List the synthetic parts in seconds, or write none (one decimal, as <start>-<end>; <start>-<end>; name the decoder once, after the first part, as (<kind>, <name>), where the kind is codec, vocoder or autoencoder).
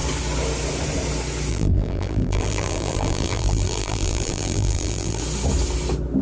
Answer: 1.5-5.2 (vocoder, BigVGAN v2)